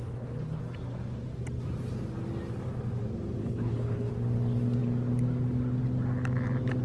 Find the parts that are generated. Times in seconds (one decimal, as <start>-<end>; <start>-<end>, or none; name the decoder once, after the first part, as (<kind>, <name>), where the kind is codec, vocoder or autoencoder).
0.0-0.6 (codec, HILCodec); 3.4-4.1